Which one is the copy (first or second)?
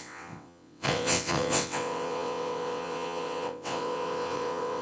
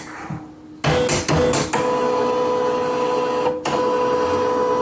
first